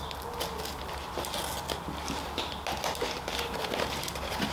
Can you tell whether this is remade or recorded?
recorded